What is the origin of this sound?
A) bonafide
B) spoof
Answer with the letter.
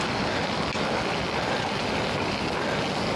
A